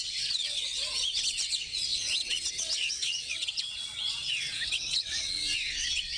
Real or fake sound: fake